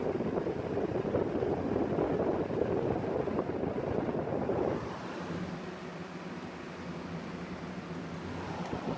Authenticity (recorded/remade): recorded